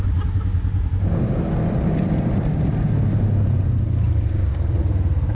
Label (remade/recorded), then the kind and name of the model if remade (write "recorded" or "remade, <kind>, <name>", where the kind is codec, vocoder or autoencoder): recorded